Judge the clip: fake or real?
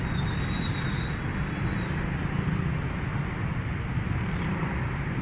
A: real